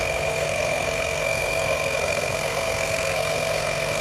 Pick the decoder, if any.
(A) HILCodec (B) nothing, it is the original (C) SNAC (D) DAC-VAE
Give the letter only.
C